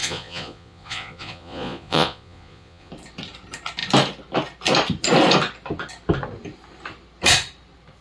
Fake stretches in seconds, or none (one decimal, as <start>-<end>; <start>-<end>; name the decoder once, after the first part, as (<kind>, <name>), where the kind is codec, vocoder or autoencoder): 0.0-2.9 (vocoder, Vocos)